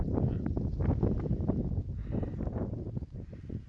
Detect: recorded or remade recorded